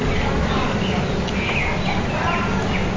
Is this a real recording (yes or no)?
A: yes